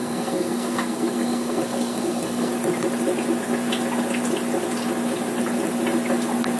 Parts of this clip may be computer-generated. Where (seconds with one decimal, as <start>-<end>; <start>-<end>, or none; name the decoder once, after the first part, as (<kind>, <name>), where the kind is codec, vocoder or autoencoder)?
0.0-2.5 (codec, SNAC)